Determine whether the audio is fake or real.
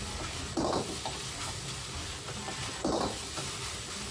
fake